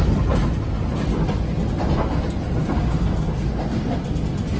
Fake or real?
real